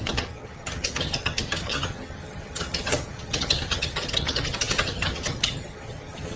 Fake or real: fake